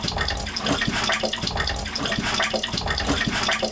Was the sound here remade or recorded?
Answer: recorded